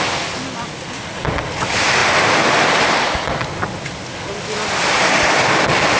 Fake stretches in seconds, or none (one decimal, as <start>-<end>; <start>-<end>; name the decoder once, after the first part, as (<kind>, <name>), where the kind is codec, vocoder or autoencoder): none

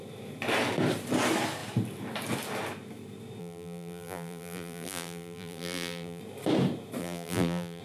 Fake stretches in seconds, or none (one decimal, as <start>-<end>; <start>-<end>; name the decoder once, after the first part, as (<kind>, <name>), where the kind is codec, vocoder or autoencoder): 3.4-6.2 (vocoder, BigVGAN v2); 7.0-7.8

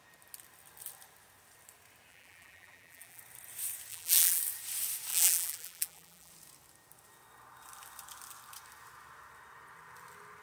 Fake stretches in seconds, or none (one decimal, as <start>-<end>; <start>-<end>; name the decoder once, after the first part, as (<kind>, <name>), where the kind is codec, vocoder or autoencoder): 2.1-3.2 (vocoder, BigVGAN v2); 3.9-4.4; 5.1-6.3